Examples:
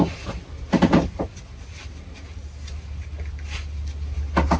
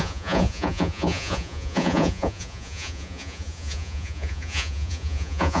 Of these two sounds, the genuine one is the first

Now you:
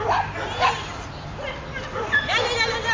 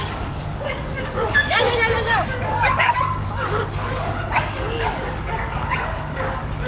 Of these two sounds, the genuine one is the first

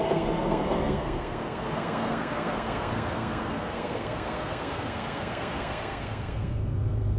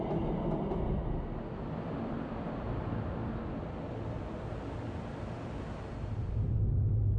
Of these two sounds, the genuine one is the second